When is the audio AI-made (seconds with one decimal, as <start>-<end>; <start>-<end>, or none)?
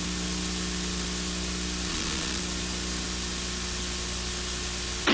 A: 1.9-2.4